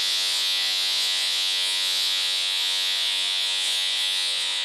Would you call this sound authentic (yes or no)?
no